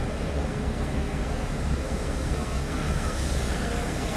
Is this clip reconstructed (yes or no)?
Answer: yes